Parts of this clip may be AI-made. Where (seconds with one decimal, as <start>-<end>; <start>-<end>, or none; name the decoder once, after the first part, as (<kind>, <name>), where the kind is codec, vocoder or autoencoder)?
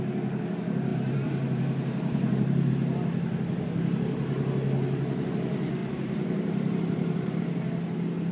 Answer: 0.9-2.7 (vocoder, BigVGAN v2); 5.8-7.4